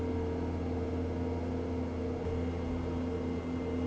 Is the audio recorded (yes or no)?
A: yes